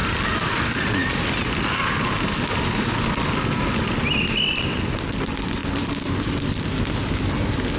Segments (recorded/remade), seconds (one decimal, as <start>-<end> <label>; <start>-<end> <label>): 0.0-7.8 recorded